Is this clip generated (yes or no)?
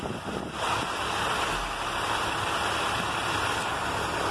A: no